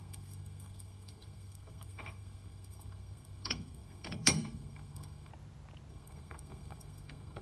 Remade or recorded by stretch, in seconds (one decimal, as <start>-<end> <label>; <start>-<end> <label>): 0.0-5.3 remade; 5.3-5.9 recorded; 5.9-7.4 remade